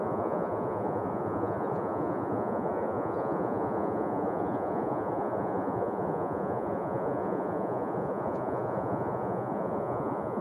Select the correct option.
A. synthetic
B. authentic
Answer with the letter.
A